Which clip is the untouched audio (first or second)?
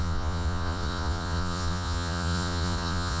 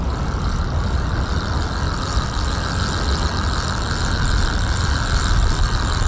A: second